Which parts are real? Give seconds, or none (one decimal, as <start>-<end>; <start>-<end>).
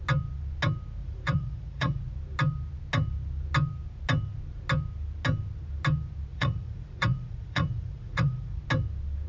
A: 0.0-1.0; 2.1-6.3; 8.6-9.3